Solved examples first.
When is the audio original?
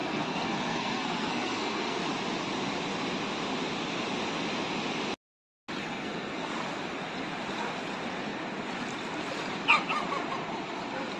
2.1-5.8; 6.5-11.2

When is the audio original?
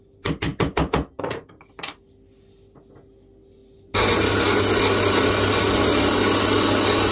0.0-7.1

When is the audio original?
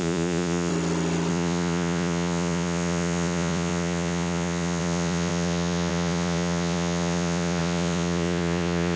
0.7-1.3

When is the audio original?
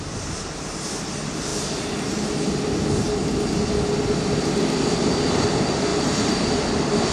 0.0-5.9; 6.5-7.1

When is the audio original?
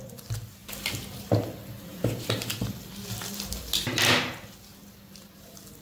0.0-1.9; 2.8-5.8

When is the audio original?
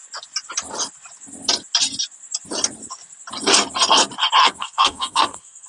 0.0-4.4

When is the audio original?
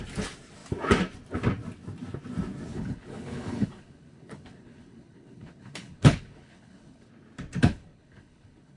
0.0-2.7; 7.1-7.7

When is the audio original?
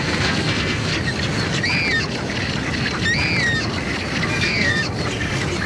0.9-4.3; 4.8-5.7